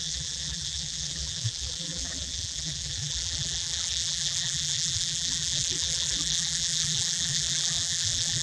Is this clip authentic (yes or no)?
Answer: no